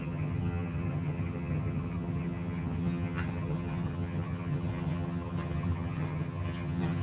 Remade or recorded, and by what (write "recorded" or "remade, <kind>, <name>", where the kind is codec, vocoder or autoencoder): remade, vocoder, HiFi-GAN